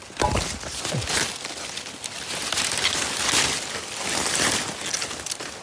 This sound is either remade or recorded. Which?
recorded